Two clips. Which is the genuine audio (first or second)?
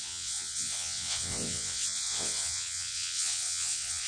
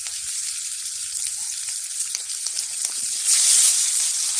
second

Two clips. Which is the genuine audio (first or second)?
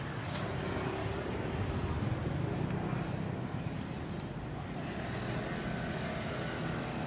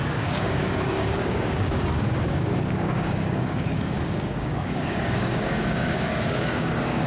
first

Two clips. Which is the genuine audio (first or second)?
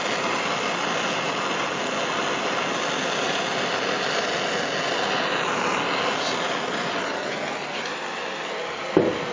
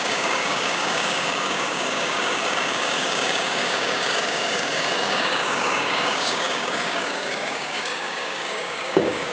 first